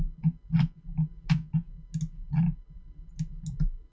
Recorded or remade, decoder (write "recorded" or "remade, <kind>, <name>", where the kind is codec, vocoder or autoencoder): recorded